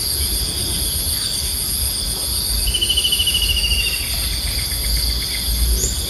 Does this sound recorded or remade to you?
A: recorded